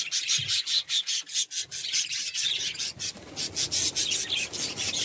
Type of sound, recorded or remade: recorded